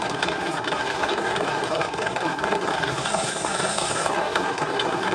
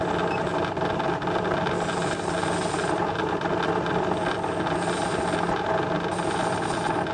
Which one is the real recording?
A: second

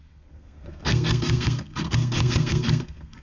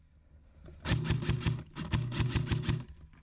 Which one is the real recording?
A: second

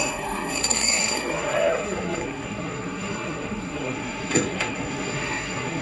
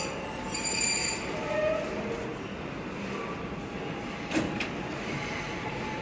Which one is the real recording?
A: second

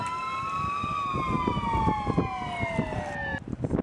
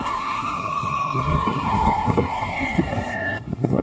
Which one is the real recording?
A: first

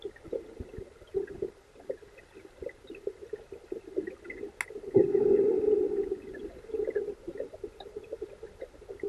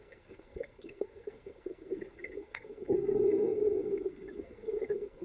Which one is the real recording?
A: first